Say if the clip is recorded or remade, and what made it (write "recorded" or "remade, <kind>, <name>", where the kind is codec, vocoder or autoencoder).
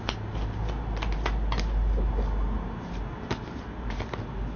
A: recorded